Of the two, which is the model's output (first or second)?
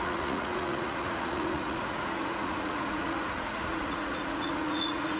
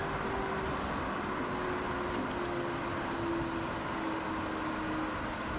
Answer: first